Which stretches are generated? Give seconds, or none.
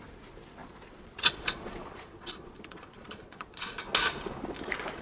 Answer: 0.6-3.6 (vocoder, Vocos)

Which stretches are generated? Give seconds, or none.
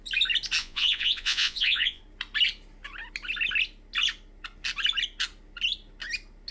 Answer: 0.6-2.0 (vocoder, Vocos)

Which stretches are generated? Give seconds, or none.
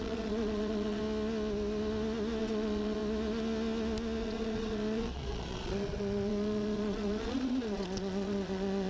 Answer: 0.0-1.0 (vocoder, Vocos); 2.4-3.0; 4.2-8.9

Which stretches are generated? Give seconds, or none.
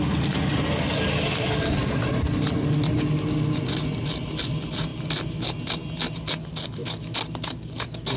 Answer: none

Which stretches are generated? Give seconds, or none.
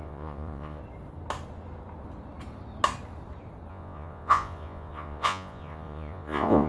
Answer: 0.0-0.8 (vocoder, Vocos); 3.7-6.7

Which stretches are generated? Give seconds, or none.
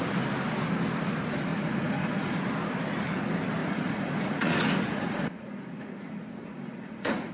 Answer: 1.5-2.4 (vocoder, Vocos); 3.6-7.3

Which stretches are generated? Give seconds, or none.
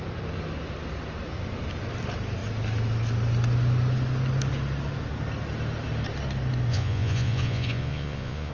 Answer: 6.7-8.5 (vocoder, Vocos)